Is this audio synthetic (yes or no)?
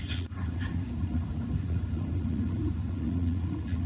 yes